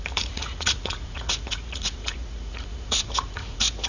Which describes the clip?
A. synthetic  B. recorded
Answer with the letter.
A